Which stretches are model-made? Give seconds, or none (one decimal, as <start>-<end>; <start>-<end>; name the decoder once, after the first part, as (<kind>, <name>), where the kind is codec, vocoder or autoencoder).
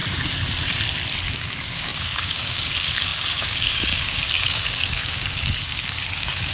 1.3-6.5 (codec, DAC)